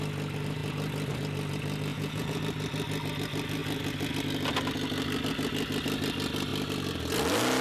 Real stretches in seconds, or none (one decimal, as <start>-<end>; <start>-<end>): 0.0-1.9; 2.4-7.6